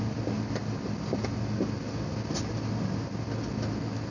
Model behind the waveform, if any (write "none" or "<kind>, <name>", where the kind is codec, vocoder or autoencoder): none